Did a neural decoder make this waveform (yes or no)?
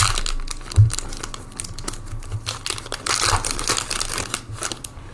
no